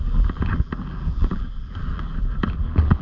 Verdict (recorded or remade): remade